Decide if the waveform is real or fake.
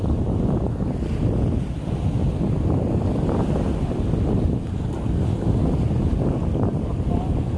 real